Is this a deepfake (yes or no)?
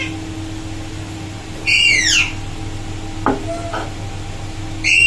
no